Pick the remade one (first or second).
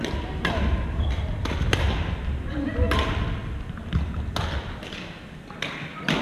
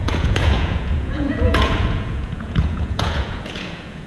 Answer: second